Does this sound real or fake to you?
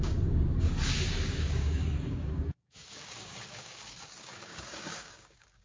fake